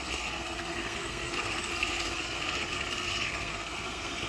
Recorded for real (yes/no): no